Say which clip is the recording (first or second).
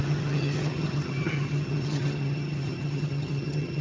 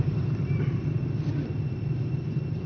second